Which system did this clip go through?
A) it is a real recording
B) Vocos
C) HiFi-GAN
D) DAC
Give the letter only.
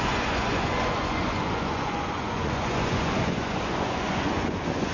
B